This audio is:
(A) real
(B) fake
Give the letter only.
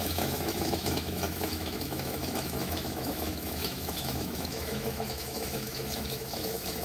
B